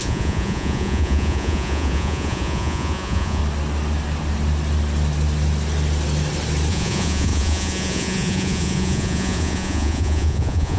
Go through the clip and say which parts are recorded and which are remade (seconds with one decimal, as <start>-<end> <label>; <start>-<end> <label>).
0.0-3.4 remade; 3.4-6.7 recorded; 6.7-10.8 remade